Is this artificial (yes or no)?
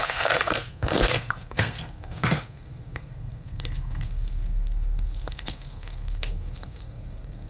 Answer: yes